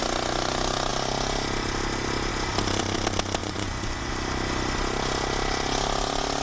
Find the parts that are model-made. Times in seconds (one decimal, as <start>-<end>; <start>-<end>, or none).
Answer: 3.4-4.1